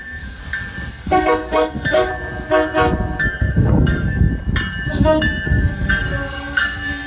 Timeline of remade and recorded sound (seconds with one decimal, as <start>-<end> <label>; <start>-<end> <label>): 0.0-0.4 remade; 0.4-0.9 recorded; 0.9-2.1 remade; 2.1-3.2 recorded; 3.2-4.3 remade; 4.3-4.9 recorded; 4.9-7.1 remade